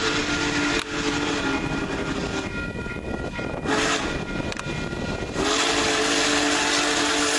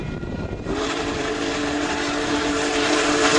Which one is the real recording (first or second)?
first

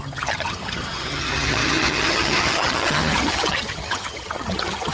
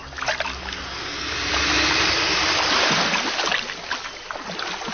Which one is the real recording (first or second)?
second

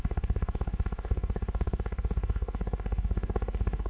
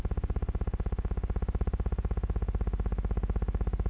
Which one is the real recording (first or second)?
second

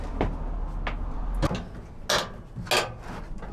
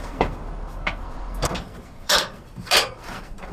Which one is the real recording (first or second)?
first